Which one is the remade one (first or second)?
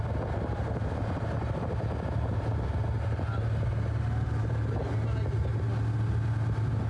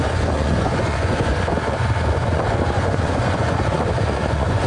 second